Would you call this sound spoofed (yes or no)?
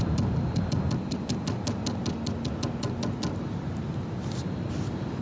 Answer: no